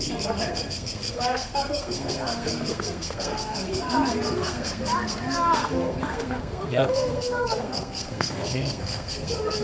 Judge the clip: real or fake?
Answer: fake